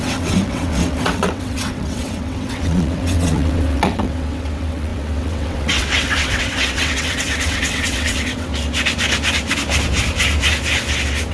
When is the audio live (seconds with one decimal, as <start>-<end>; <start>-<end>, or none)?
8.5-11.3